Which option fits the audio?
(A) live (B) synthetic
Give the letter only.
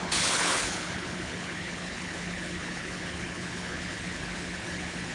B